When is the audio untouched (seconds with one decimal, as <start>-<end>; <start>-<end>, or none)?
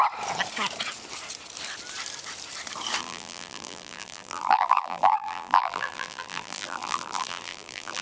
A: 0.0-3.0